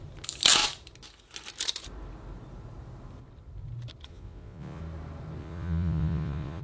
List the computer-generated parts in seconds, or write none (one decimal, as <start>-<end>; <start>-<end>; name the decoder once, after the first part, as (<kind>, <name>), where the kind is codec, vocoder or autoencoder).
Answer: 4.1-4.8 (vocoder, Vocos); 5.4-6.6